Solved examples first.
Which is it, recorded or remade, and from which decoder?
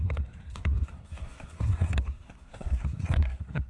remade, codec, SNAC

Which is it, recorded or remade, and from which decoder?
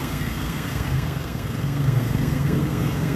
remade, codec, SNAC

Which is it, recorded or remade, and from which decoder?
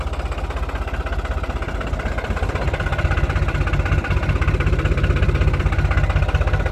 recorded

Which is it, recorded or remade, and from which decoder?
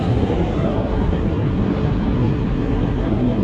remade, codec, SNAC